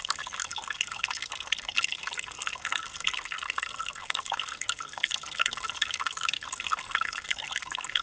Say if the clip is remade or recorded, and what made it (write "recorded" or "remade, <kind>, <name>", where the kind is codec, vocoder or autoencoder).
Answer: remade, codec, SNAC